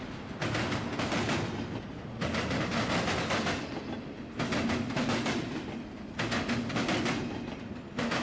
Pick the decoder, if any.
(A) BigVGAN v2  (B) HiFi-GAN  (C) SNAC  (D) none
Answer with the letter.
D